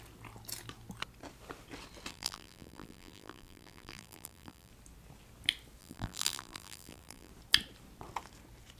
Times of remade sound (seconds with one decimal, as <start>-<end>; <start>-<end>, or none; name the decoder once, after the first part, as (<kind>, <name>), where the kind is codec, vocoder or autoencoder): 2.1-4.7 (vocoder, BigVGAN v2); 5.8-7.3